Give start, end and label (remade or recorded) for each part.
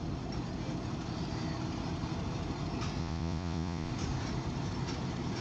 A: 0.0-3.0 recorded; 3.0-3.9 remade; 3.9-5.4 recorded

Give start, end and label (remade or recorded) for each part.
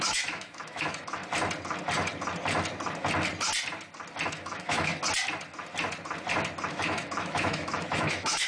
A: 0.0-1.2 remade; 1.2-4.3 recorded; 4.3-4.9 remade; 4.9-6.7 recorded; 6.7-8.5 remade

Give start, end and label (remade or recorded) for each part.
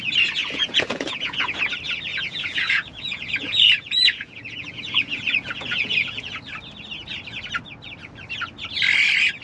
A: 0.0-0.4 recorded; 0.4-1.6 remade; 1.6-2.1 recorded; 2.1-6.4 remade; 6.4-9.4 recorded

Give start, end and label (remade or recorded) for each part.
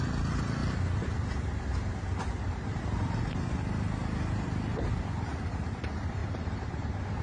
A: 0.0-7.2 remade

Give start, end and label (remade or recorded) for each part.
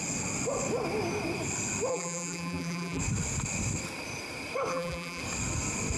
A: 0.0-1.9 recorded; 1.9-3.0 remade; 3.0-4.7 recorded; 4.7-5.2 remade; 5.2-6.0 recorded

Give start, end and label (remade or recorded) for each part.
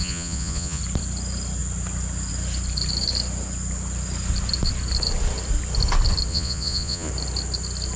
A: 0.0-0.8 remade; 0.8-6.3 recorded; 6.3-7.1 remade; 7.1-8.0 recorded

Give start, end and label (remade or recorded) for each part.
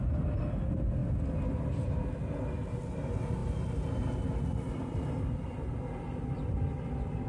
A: 0.0-7.3 recorded